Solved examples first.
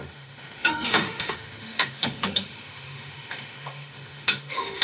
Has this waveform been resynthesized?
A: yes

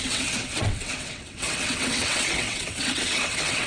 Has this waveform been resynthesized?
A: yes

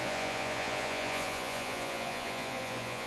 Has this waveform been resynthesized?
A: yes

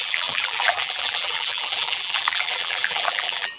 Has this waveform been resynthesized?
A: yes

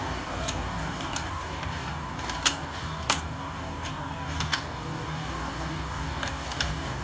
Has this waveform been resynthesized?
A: yes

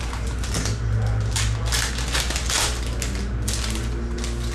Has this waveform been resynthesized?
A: no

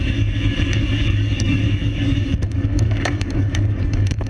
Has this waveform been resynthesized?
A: yes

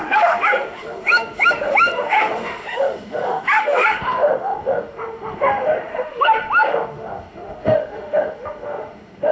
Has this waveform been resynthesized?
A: yes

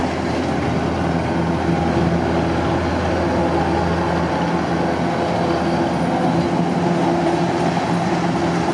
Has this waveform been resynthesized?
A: no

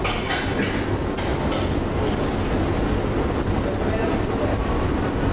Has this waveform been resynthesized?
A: no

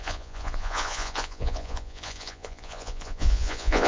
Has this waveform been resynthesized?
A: yes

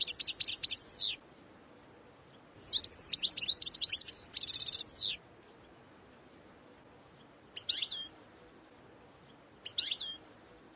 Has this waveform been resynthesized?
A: no